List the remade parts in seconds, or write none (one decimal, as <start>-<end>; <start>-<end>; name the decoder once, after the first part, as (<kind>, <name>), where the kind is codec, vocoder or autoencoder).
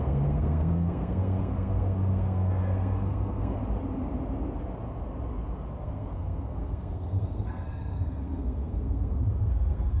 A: 0.0-3.6 (codec, SNAC); 5.8-10.0